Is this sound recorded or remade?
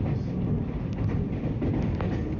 recorded